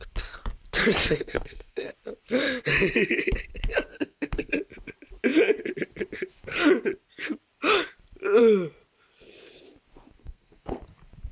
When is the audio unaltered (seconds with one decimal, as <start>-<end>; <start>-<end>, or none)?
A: 0.0-1.0; 1.9-3.9; 4.5-10.2; 10.8-11.3